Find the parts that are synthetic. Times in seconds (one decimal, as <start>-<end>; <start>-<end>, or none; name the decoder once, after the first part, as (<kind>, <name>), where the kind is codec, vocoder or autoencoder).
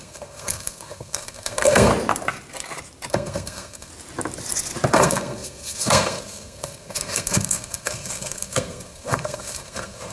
0.0-1.9 (codec, SNAC); 3.1-3.9; 4.9-10.1